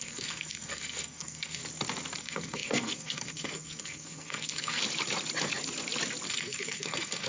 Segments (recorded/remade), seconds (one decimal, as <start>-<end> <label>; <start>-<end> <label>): 0.0-1.6 remade; 1.6-2.2 recorded; 2.2-4.8 remade; 4.8-6.3 recorded; 6.3-7.3 remade